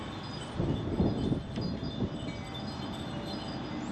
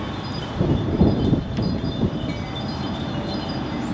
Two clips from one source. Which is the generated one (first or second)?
second